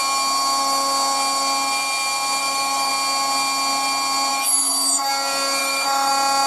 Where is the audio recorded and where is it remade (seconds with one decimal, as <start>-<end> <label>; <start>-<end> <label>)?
0.0-2.4 recorded; 2.4-2.9 remade; 2.9-4.3 recorded; 4.3-5.1 remade; 5.1-5.6 recorded; 5.6-6.1 remade; 6.1-6.5 recorded